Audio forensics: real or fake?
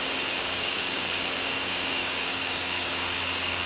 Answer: fake